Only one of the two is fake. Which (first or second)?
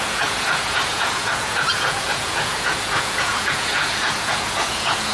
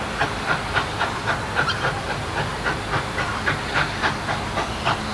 first